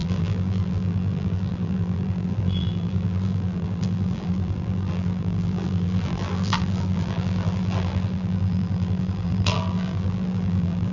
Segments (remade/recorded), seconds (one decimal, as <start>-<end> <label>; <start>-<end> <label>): 0.0-10.9 remade